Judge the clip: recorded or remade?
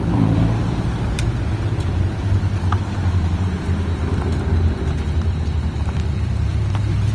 remade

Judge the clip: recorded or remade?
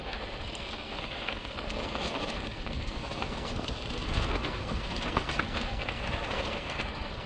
remade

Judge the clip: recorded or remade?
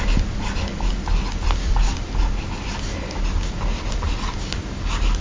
recorded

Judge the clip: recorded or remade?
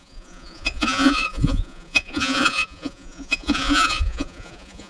remade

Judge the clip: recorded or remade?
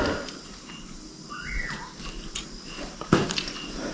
recorded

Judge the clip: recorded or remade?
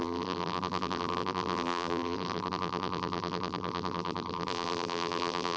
remade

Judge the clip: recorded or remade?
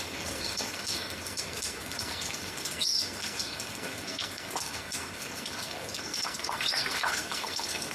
remade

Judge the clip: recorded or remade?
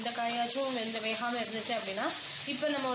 recorded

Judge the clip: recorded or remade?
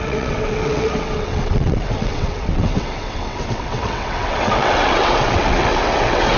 remade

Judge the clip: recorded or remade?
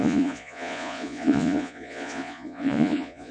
remade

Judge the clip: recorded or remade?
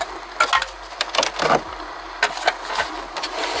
recorded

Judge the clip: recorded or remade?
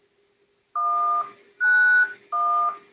recorded